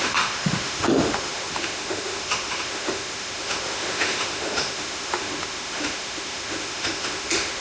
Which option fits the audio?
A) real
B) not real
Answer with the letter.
B